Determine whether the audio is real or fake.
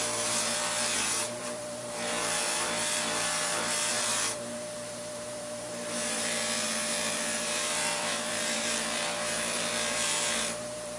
fake